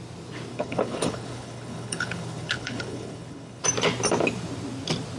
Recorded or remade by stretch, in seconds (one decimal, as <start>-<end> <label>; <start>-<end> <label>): 0.0-0.5 recorded; 0.5-3.6 remade; 3.6-5.2 recorded